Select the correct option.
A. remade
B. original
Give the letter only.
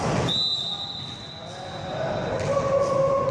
B